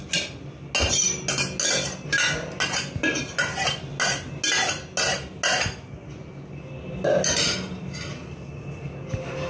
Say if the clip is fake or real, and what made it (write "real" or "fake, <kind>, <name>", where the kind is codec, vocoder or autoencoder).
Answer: real